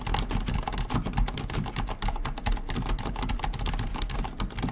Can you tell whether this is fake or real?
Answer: real